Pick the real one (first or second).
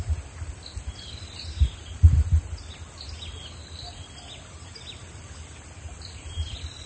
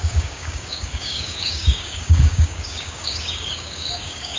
first